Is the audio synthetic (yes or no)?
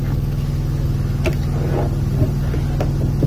no